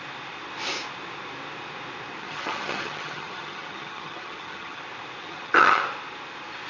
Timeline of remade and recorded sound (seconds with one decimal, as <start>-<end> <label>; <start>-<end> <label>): 0.0-2.2 recorded; 2.2-4.8 remade; 4.8-5.2 recorded; 5.2-5.8 remade; 5.8-6.7 recorded